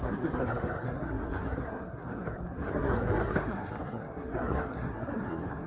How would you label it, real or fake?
fake